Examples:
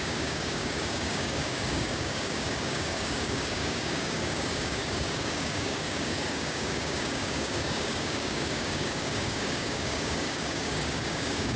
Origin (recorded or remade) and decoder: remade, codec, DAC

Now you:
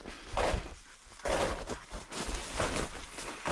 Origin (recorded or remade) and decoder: recorded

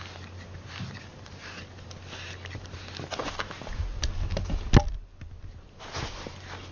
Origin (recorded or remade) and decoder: recorded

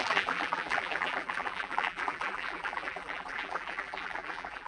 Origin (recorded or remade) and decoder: remade, vocoder, BigVGAN v2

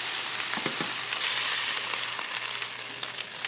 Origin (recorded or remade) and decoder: recorded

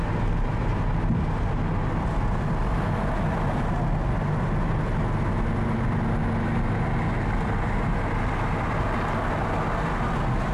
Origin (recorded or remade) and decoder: recorded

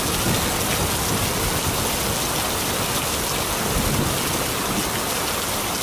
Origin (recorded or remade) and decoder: recorded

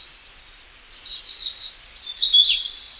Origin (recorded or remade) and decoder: recorded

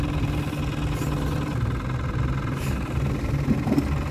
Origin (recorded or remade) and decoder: recorded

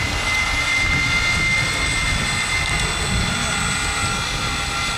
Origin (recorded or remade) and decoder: recorded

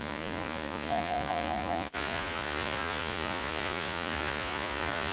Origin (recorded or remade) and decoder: remade, vocoder, Vocos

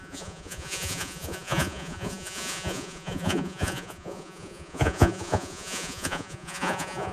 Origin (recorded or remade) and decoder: remade, vocoder, Vocos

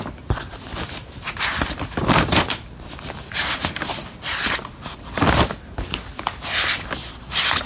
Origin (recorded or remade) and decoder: recorded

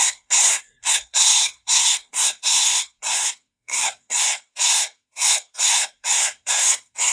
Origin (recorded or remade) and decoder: remade, codec, SNAC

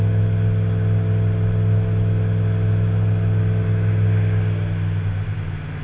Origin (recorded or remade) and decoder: recorded